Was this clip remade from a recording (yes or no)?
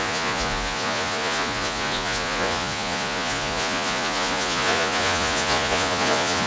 yes